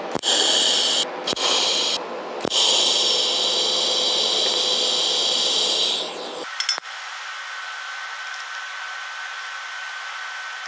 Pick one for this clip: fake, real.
real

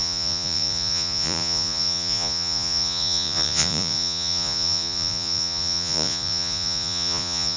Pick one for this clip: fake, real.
fake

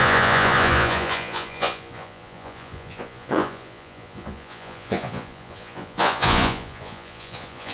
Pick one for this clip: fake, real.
fake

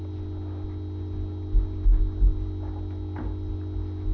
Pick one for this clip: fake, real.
real